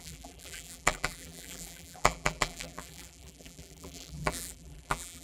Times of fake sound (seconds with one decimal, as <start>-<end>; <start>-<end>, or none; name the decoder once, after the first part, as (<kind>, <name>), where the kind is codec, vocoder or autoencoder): 0.0-5.2 (vocoder, BigVGAN v2)